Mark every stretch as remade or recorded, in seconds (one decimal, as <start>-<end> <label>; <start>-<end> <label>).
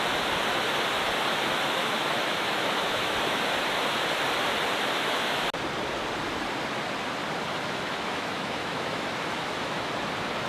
0.0-1.8 recorded; 1.8-3.4 remade; 3.4-4.8 recorded; 4.8-5.4 remade; 5.4-7.5 recorded; 7.5-9.9 remade; 9.9-10.5 recorded